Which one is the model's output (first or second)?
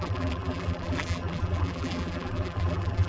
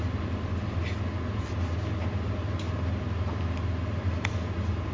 first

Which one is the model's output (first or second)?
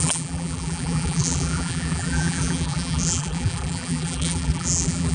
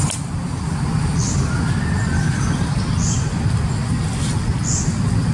first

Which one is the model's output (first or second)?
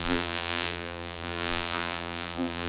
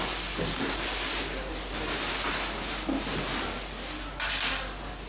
first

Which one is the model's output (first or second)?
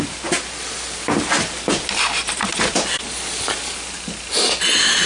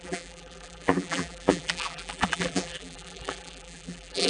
second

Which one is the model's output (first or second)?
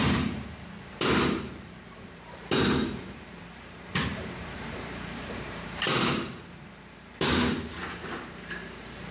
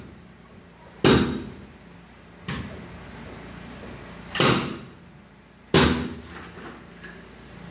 first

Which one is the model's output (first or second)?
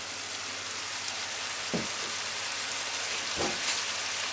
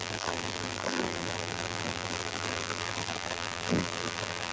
second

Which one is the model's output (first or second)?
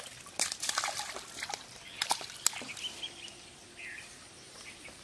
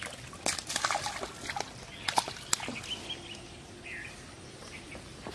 first